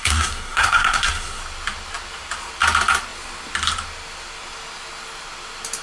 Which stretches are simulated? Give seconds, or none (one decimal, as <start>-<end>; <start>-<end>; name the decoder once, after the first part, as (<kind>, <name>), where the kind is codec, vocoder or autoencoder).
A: 0.0-1.4 (codec, SNAC)